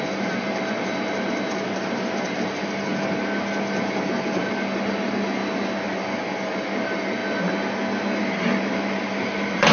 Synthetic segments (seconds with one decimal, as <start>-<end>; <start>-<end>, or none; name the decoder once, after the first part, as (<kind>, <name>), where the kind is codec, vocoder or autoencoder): 0.0-2.9 (vocoder, BigVGAN v2); 4.5-5.4; 5.9-7.2; 8.2-9.7